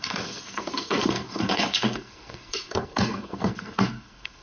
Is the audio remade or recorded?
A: remade